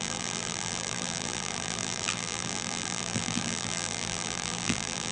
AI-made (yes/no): yes